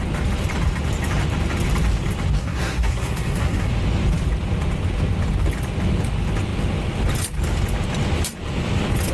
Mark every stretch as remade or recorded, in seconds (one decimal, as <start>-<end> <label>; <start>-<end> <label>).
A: 0.0-2.4 recorded; 2.4-3.7 remade; 3.7-9.1 recorded